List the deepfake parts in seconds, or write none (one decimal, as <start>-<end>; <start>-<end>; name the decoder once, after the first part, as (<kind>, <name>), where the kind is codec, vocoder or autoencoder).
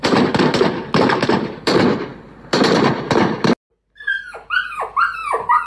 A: none